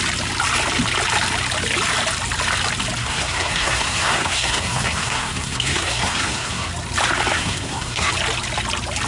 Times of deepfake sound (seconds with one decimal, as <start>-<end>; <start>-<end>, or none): 3.0-6.7; 7.3-8.1